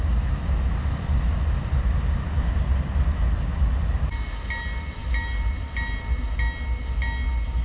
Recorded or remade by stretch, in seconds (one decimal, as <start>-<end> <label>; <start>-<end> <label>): 0.0-7.6 recorded